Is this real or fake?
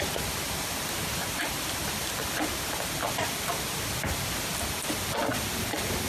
real